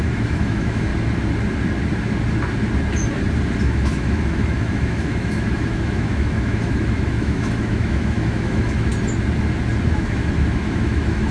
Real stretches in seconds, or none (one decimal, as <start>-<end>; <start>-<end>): 0.9-3.6; 8.9-9.9